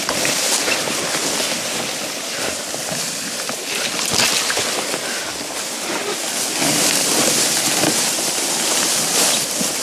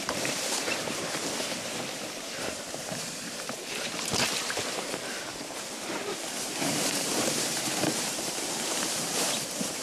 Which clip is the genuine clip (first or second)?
first